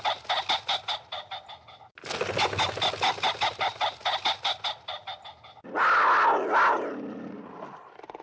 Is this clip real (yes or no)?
yes